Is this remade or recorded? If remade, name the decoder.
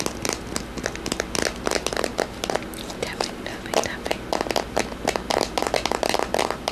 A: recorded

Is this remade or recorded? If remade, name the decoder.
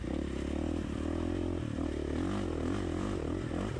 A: recorded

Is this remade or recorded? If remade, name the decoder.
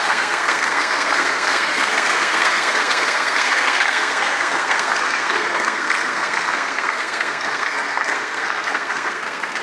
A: remade, codec, SNAC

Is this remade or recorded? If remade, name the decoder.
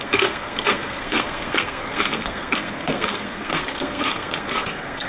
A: remade, codec, SNAC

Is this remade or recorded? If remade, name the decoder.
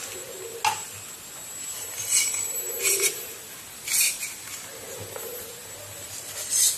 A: recorded